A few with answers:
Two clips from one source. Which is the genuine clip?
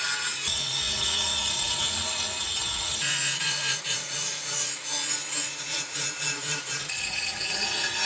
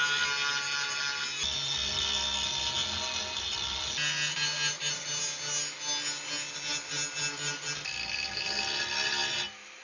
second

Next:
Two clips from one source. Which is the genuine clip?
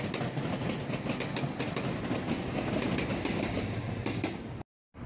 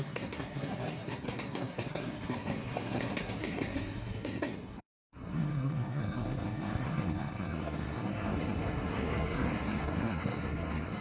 first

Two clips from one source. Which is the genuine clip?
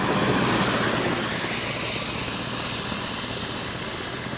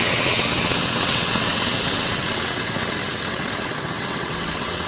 first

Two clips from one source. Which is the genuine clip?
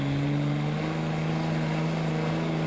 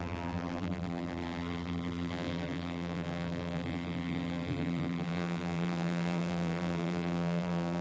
first